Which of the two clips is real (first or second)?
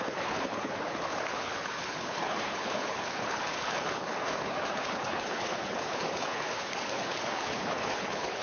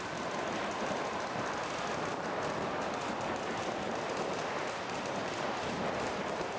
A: second